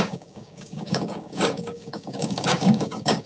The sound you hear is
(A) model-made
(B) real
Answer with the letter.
A